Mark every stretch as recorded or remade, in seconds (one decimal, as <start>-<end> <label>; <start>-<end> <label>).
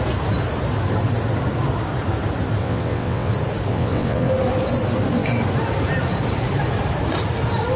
0.0-2.6 recorded; 2.6-3.3 remade; 3.3-3.7 recorded; 3.7-4.3 remade; 4.3-7.8 recorded